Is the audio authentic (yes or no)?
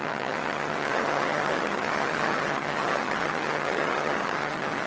no